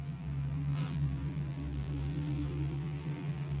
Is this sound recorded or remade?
remade